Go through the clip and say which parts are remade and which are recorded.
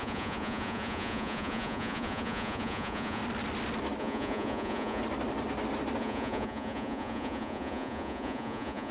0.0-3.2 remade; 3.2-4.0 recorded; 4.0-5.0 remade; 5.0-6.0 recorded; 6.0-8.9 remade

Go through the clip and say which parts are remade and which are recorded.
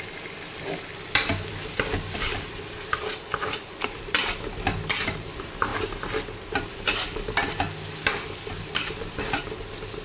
0.0-5.7 remade; 5.7-6.5 recorded; 6.5-10.0 remade